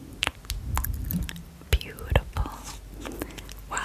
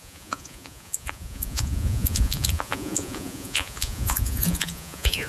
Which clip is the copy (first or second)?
second